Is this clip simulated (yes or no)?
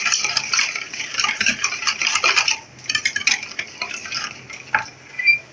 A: no